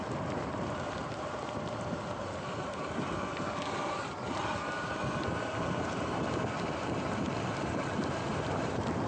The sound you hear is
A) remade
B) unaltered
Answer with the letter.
B